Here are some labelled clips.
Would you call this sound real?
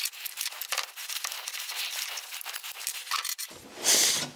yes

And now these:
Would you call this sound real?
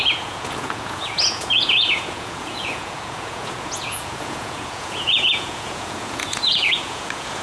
no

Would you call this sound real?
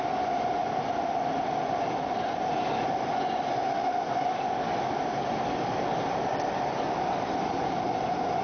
yes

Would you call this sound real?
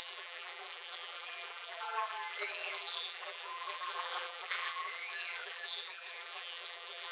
no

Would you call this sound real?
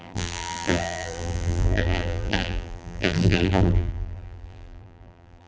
no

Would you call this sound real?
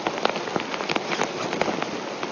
yes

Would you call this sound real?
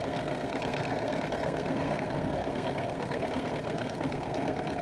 no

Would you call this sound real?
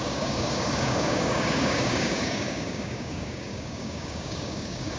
no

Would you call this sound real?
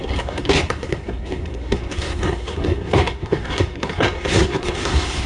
no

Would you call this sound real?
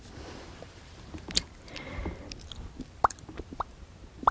yes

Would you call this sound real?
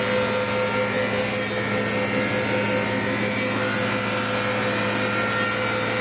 yes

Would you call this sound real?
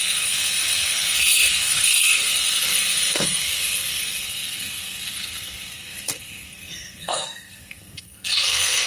no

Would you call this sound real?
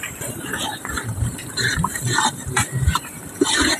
no